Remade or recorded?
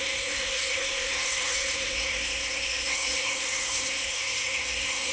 remade